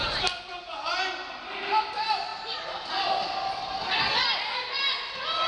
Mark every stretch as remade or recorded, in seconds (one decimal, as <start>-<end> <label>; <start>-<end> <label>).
0.0-5.5 recorded